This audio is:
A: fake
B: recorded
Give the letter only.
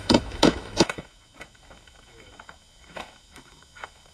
A